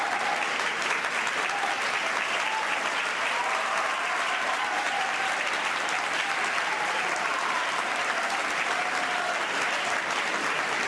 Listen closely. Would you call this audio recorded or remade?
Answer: recorded